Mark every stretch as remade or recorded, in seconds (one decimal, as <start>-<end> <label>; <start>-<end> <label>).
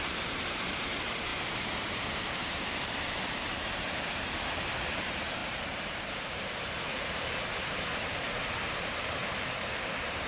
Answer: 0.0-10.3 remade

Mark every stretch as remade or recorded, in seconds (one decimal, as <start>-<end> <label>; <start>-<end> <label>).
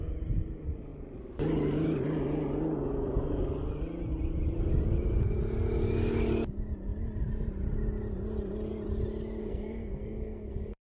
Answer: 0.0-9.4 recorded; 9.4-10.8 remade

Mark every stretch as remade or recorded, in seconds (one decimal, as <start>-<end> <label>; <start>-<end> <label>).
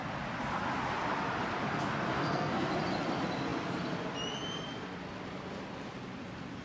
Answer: 0.0-2.1 recorded; 2.1-2.7 remade; 2.7-6.6 recorded